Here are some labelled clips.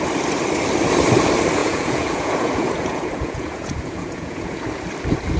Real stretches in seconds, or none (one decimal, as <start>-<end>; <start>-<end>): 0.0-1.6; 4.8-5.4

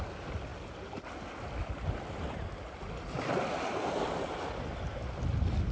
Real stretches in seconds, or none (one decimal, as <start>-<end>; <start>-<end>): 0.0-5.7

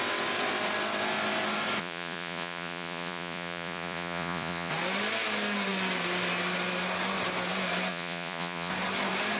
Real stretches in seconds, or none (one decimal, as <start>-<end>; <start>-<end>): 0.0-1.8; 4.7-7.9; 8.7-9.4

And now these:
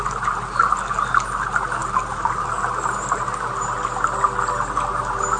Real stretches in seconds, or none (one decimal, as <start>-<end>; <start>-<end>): 0.0-5.4